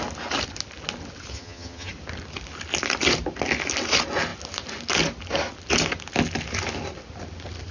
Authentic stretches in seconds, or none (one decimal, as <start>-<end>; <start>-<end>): 0.0-1.3; 1.9-7.7

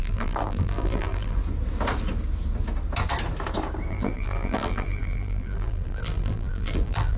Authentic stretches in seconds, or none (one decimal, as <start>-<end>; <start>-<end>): 1.4-3.9

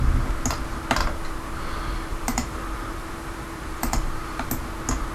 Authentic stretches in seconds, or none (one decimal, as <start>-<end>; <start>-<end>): 0.0-2.1; 4.5-5.1

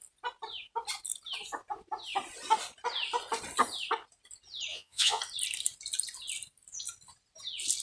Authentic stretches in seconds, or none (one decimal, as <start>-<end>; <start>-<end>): 0.0-4.7; 5.2-7.8

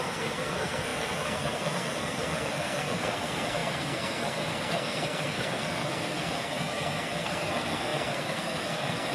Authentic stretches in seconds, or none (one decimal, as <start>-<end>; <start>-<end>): none

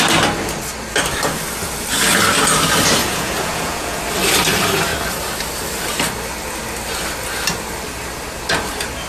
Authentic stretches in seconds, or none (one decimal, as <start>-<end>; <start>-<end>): 0.0-3.0; 4.0-9.1

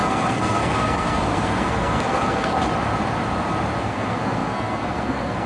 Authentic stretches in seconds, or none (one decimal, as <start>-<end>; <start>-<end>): 2.5-3.8